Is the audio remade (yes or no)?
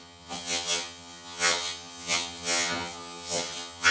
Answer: yes